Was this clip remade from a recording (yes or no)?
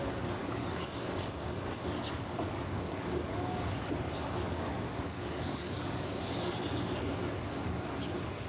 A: yes